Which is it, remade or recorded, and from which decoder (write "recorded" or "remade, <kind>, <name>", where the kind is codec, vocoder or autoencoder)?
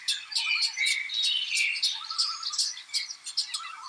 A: recorded